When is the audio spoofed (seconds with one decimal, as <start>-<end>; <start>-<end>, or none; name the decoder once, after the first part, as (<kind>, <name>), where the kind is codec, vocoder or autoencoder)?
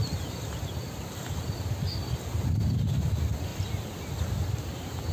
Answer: none